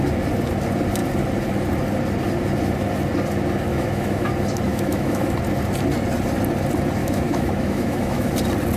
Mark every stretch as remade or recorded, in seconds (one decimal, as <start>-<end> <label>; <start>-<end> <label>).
0.0-3.7 recorded; 3.7-4.3 remade; 4.3-4.7 recorded; 4.7-5.3 remade; 5.3-7.0 recorded; 7.0-8.3 remade; 8.3-8.8 recorded